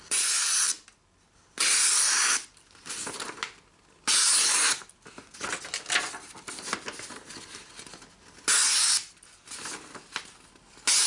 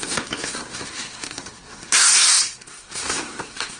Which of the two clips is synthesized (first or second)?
second